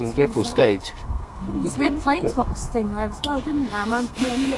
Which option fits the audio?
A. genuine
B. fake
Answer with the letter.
B